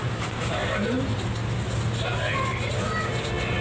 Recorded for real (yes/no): yes